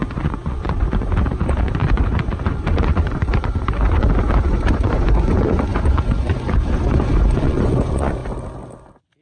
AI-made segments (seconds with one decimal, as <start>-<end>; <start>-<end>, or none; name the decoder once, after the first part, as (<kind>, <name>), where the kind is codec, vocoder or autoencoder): 0.0-8.2 (vocoder, Vocos)

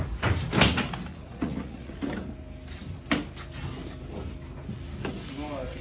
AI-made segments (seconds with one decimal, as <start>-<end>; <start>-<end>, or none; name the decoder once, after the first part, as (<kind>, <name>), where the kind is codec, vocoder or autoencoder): 1.1-1.9 (vocoder, Vocos)

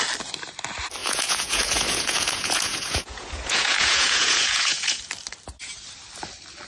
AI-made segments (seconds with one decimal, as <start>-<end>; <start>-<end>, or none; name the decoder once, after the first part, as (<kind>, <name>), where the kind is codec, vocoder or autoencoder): 1.0-5.0 (vocoder, Vocos)